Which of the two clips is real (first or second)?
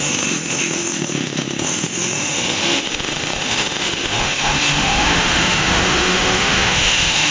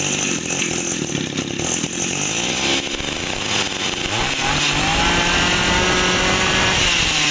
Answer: second